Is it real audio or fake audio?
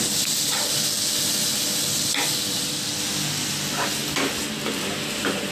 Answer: real